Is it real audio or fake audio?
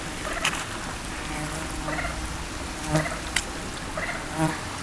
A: real